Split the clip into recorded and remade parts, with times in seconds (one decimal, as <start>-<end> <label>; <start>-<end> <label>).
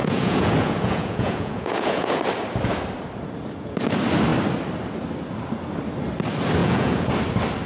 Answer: 0.0-2.2 remade; 2.2-6.6 recorded; 6.6-7.1 remade; 7.1-7.7 recorded